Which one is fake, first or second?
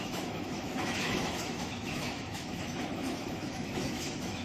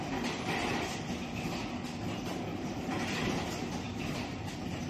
first